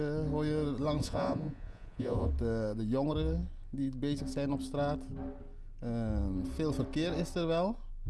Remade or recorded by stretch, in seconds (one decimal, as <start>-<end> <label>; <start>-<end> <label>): 0.0-1.0 recorded; 1.0-2.3 remade; 2.3-8.1 recorded